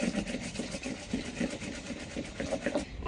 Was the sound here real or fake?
real